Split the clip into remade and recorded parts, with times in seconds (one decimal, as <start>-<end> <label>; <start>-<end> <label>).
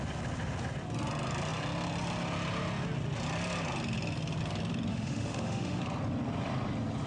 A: 0.0-4.9 recorded; 4.9-5.8 remade; 5.8-7.1 recorded